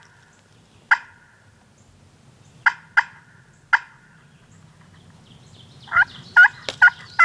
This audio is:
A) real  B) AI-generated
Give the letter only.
A